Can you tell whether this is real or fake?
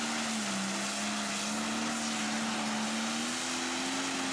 real